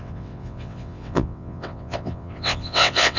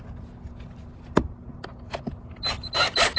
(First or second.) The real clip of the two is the second